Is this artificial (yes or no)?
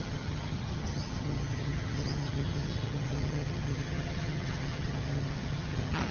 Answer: yes